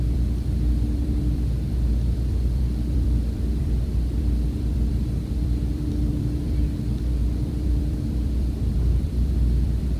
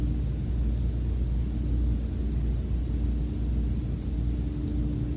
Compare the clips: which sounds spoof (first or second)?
first